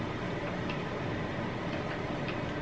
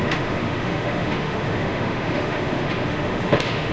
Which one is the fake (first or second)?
second